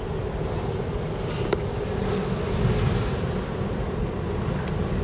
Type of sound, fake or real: real